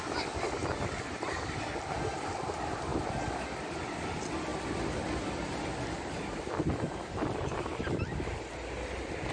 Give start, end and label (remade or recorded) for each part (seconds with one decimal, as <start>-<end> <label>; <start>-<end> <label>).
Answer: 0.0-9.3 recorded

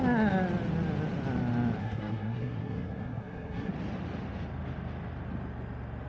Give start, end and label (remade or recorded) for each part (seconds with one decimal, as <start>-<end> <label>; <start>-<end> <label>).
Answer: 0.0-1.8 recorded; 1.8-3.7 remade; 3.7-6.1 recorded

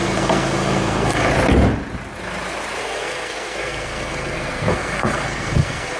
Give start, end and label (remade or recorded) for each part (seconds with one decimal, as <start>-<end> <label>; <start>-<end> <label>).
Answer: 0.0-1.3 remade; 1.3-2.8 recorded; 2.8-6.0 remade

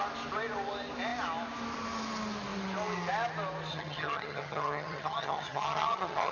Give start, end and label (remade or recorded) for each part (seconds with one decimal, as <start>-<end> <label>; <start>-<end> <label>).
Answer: 0.0-3.7 recorded; 3.7-6.3 remade